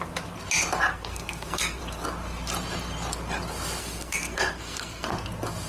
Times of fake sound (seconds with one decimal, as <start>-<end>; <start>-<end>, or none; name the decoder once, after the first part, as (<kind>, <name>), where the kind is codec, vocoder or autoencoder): 0.9-1.8 (codec, SNAC); 3.8-5.1